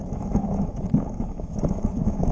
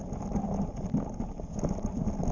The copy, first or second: first